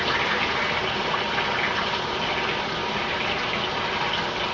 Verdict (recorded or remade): recorded